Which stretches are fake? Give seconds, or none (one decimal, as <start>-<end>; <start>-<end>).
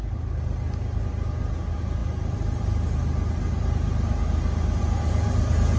none